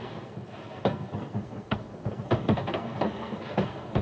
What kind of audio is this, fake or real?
fake